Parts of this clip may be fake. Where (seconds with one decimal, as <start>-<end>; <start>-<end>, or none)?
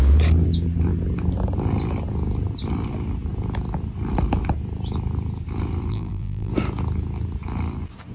5.9-6.5